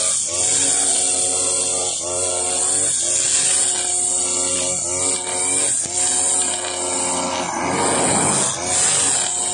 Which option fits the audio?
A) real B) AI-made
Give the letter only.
A